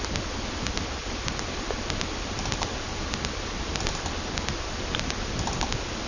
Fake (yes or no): yes